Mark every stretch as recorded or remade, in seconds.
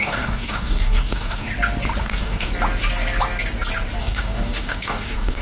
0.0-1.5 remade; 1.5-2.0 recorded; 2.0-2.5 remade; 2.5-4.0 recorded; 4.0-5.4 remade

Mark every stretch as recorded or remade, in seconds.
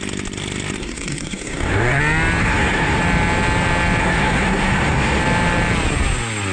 0.0-0.8 recorded; 0.8-2.0 remade; 2.0-2.4 recorded; 2.4-3.0 remade; 3.0-4.0 recorded; 4.0-5.2 remade; 5.2-6.5 recorded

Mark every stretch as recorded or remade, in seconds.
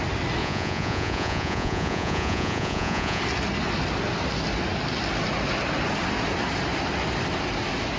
0.0-0.4 recorded; 0.4-3.2 remade; 3.2-8.0 recorded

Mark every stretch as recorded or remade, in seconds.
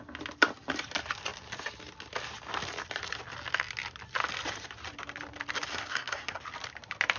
0.0-5.7 recorded; 5.7-6.4 remade; 6.4-7.2 recorded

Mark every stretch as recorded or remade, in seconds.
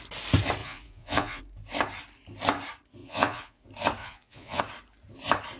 0.0-0.6 recorded; 0.6-1.4 remade; 1.4-3.0 recorded; 3.0-3.6 remade; 3.6-4.0 recorded; 4.0-4.6 remade; 4.6-5.6 recorded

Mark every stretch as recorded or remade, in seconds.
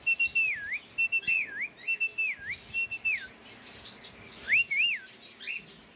0.0-6.0 recorded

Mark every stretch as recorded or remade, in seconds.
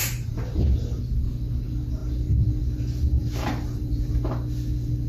0.0-1.0 remade; 1.0-3.2 recorded; 3.2-4.2 remade; 4.2-5.1 recorded